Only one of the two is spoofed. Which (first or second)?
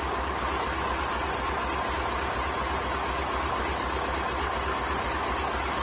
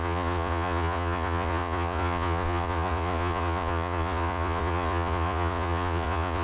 second